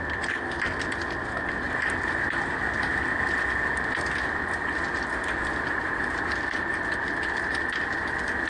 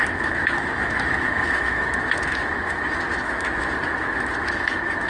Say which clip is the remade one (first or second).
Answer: second